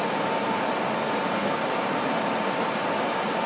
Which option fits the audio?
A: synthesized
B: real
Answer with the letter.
B